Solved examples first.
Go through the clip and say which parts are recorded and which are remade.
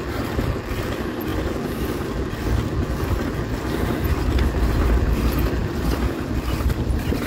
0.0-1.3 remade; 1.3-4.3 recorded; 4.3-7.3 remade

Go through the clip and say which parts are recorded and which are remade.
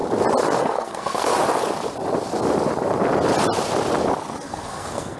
0.0-0.6 recorded; 0.6-1.3 remade; 1.3-4.4 recorded; 4.4-5.2 remade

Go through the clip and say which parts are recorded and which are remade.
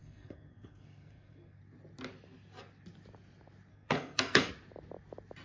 0.0-1.6 remade; 1.6-3.7 recorded; 3.7-4.5 remade; 4.5-5.4 recorded